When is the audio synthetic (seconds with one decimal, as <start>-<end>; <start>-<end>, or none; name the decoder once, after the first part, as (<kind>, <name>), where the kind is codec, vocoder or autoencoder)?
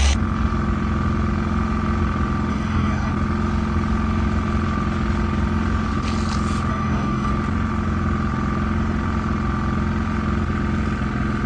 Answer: 2.5-3.1 (codec, DAC); 6.7-7.3